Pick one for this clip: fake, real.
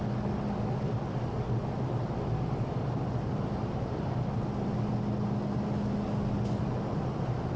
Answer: real